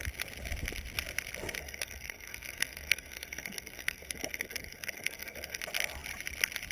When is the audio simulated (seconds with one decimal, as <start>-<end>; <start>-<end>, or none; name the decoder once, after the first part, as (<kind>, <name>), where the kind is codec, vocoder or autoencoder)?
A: 1.6-5.6 (codec, SNAC)